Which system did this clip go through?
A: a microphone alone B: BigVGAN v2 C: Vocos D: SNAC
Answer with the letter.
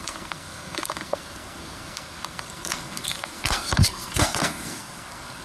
D